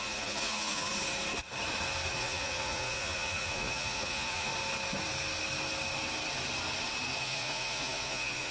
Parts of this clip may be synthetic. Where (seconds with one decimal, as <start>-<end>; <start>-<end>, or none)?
0.0-0.9; 2.1-4.5; 7.2-8.5